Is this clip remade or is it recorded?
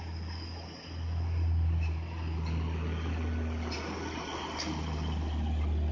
recorded